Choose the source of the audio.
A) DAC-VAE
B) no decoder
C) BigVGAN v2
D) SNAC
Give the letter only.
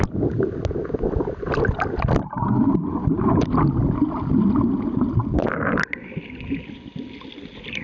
B